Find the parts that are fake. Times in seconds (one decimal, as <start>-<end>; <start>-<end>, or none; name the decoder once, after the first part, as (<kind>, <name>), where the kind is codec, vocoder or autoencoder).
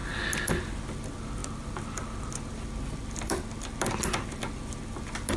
none